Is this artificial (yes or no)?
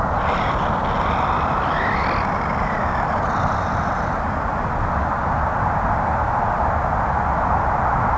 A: no